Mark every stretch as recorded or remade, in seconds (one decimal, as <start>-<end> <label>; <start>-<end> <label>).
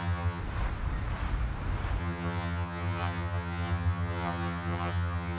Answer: 0.0-0.4 remade; 0.4-2.0 recorded; 2.0-5.4 remade